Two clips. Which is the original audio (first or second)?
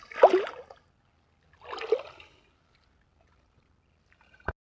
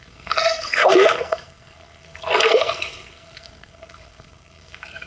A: first